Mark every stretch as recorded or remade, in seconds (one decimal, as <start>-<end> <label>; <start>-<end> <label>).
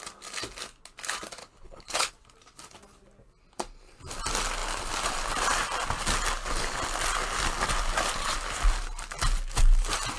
0.0-1.4 recorded; 1.4-2.1 remade; 2.1-10.2 recorded